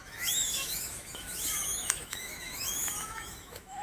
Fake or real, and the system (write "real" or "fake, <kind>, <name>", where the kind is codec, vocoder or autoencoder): fake, autoencoder, DAC-VAE